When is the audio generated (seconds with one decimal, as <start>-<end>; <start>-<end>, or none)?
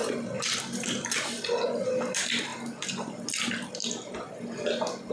none